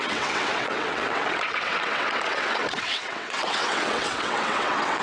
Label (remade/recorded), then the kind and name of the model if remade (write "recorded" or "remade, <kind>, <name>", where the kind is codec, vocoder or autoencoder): remade, vocoder, WaveNeXt